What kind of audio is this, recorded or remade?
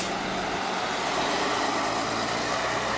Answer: recorded